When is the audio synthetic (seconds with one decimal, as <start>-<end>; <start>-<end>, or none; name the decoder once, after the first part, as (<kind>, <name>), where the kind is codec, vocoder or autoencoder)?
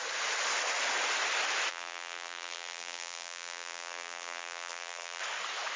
1.7-5.2 (vocoder, BigVGAN v2)